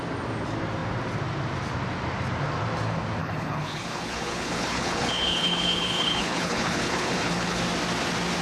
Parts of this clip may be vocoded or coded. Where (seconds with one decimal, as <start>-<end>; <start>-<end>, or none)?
3.2-7.6